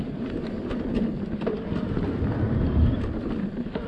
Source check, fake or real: fake